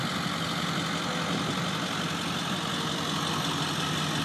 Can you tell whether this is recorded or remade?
recorded